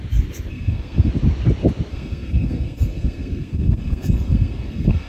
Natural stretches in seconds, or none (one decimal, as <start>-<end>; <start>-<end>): 0.0-0.5; 1.1-1.9